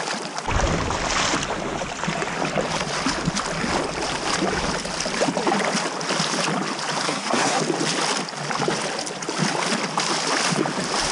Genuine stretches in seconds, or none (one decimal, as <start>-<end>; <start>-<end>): 0.0-7.0; 7.6-11.1